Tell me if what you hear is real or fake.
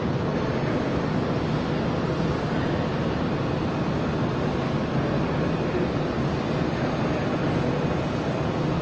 real